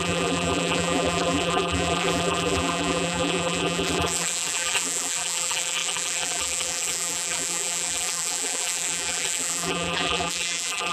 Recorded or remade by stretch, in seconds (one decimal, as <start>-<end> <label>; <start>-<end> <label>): 0.0-10.9 remade